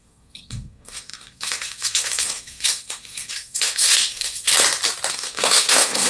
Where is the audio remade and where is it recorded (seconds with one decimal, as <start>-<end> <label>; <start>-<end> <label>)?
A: 0.0-4.5 remade; 4.5-5.1 recorded; 5.1-6.1 remade